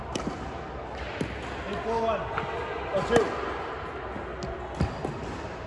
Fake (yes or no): no